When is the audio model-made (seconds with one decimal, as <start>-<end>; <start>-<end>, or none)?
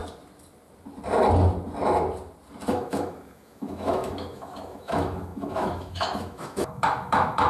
2.7-7.5